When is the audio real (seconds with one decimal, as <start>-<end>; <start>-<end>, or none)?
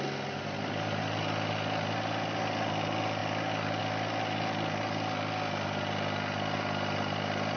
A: 0.0-7.6